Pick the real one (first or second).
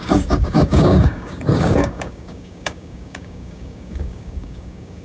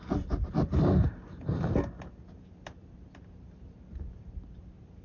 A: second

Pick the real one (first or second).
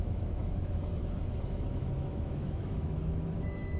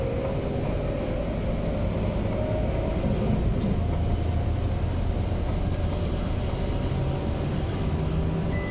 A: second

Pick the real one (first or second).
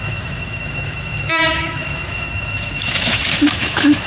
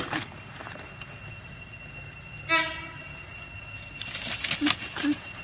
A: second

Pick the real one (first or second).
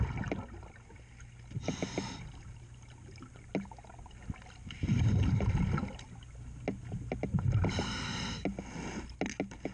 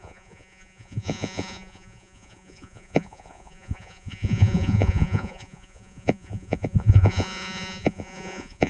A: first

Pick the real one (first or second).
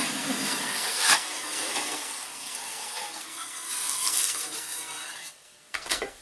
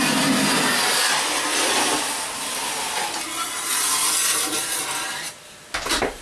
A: second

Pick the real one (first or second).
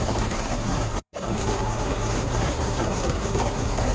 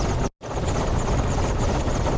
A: second